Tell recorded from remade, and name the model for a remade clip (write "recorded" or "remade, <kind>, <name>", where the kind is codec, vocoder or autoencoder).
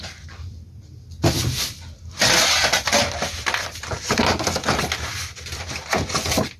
recorded